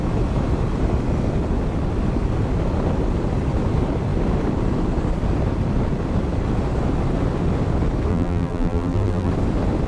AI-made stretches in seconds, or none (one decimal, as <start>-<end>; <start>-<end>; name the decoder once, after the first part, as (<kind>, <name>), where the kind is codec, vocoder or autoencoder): 8.1-9.3 (vocoder, BigVGAN v2)